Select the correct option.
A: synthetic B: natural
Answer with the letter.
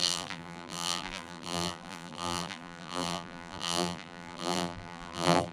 A